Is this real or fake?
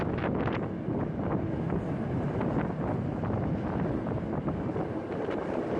real